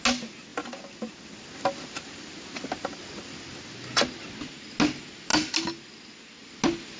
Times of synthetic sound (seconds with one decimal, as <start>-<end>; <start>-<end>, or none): none